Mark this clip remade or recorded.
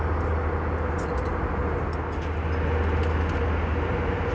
recorded